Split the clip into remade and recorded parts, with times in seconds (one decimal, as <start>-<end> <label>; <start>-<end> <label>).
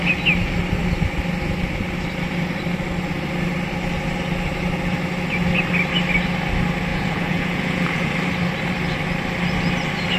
0.0-6.9 recorded; 6.9-8.1 remade; 8.1-10.2 recorded